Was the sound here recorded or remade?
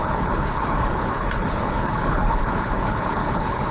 remade